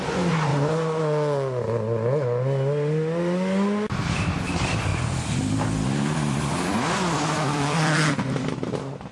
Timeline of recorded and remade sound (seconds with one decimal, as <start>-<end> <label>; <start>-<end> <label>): 0.0-0.5 remade; 0.5-4.5 recorded; 4.5-4.9 remade; 4.9-6.5 recorded; 6.5-9.1 remade